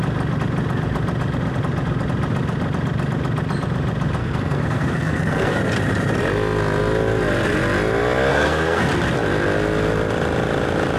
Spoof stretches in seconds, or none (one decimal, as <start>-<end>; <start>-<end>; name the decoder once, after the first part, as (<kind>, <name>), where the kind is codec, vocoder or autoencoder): 4.2-5.6 (codec, SNAC); 8.3-8.9